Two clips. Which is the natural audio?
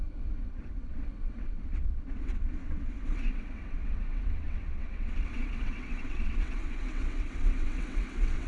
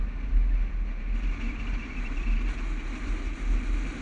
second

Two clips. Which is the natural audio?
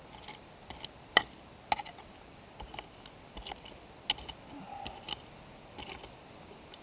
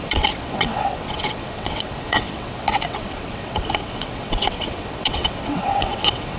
first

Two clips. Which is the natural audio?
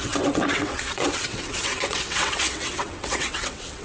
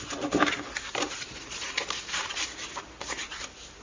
second